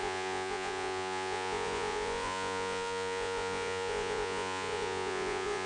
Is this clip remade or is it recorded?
remade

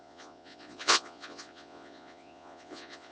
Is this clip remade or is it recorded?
remade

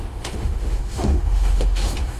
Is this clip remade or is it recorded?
remade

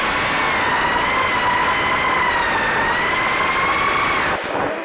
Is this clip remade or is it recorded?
recorded